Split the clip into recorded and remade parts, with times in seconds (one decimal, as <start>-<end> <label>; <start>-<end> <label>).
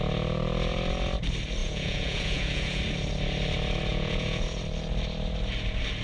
0.0-1.6 recorded; 1.6-2.8 remade; 2.8-3.9 recorded; 3.9-4.6 remade; 4.6-6.0 recorded